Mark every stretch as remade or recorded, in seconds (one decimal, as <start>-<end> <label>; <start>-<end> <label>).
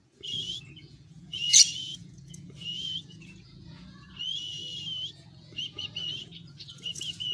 0.0-4.6 remade; 4.6-5.1 recorded; 5.1-7.3 remade